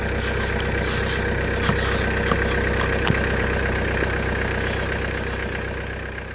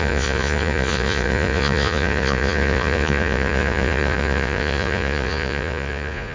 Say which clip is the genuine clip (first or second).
first